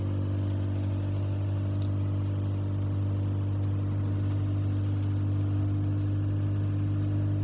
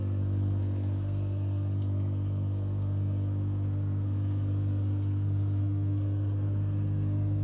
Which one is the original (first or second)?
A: first